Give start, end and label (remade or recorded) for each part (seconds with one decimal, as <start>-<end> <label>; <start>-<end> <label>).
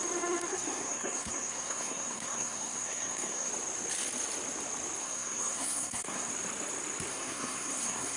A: 0.0-0.5 recorded; 0.5-3.5 remade; 3.5-5.0 recorded; 5.0-6.3 remade; 6.3-7.1 recorded; 7.1-8.2 remade